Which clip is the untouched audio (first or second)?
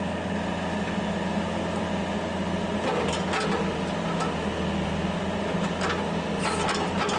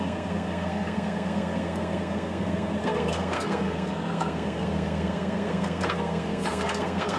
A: first